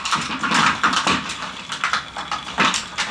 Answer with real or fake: real